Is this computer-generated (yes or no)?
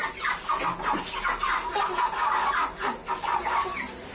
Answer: no